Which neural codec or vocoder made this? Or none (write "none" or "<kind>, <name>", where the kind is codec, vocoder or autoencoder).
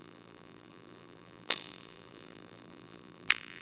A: vocoder, BigVGAN v2